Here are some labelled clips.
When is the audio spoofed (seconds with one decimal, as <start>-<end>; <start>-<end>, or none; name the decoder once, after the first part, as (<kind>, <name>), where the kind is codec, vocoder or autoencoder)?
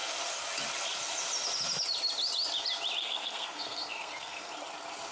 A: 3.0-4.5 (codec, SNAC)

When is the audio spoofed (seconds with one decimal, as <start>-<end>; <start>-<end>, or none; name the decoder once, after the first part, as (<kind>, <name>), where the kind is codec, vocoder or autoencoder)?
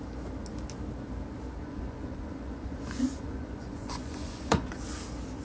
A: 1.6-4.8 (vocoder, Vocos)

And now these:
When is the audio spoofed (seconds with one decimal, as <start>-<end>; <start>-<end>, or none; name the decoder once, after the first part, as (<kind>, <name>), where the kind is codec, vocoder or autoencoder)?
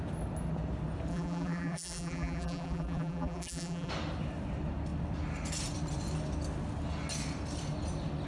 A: 1.1-3.9 (vocoder, BigVGAN v2)